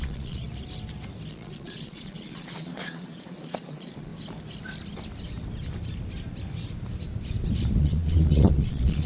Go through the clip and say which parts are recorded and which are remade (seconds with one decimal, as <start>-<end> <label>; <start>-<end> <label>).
0.0-0.4 remade; 0.4-1.3 recorded; 1.3-4.1 remade; 4.1-7.8 recorded; 7.8-9.1 remade